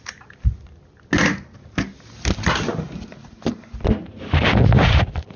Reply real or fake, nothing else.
real